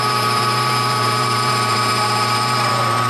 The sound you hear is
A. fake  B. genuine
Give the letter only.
A